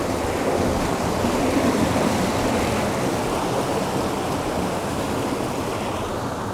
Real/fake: real